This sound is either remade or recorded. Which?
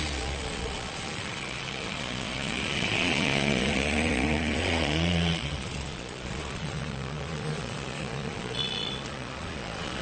remade